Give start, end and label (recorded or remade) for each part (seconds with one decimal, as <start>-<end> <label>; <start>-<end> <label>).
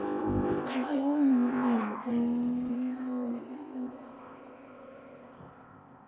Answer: 0.0-2.1 remade; 2.1-2.7 recorded; 2.7-6.1 remade